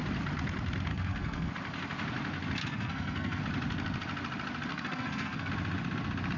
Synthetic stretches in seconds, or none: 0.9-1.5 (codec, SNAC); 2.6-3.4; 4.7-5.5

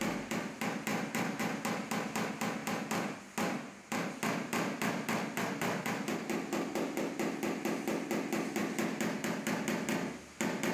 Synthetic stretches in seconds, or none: none

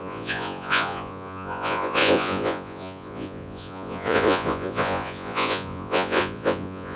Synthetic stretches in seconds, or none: 0.0-7.0 (vocoder, Vocos)

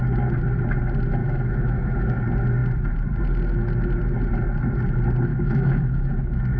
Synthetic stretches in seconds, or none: 1.2-2.2 (autoencoder, DAC-VAE); 5.3-6.6

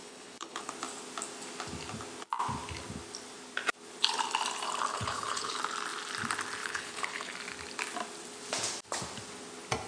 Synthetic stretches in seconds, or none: 0.0-0.7 (codec, HILCodec); 4.9-5.6; 6.6-7.3

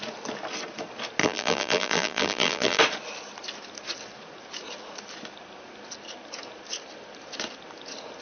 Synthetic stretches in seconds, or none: 1.2-2.8 (vocoder, BigVGAN v2)

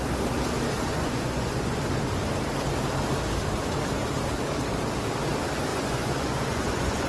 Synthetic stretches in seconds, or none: 0.9-1.8 (vocoder, Vocos); 5.7-7.1

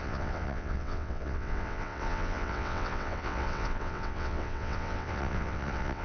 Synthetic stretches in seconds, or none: 0.0-6.0 (vocoder, WaveNeXt)